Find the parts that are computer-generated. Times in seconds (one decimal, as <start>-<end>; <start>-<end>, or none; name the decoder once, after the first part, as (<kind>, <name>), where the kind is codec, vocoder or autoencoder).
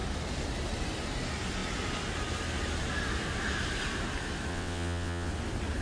4.5-5.3 (vocoder, WaveNeXt)